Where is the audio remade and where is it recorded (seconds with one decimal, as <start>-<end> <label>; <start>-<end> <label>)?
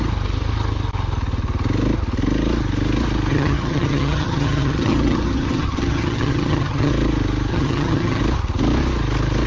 0.0-3.3 recorded; 3.3-6.9 remade; 6.9-7.5 recorded; 7.5-8.2 remade; 8.2-9.5 recorded